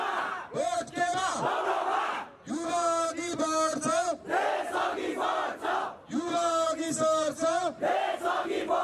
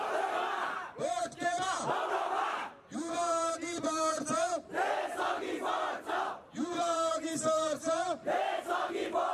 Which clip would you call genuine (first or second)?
first